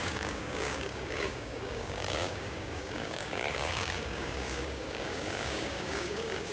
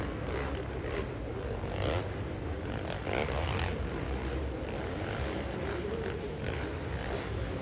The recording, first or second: second